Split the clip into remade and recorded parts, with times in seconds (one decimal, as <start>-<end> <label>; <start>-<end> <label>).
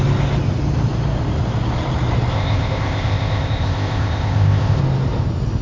0.0-2.3 recorded; 2.3-4.8 remade; 4.8-5.6 recorded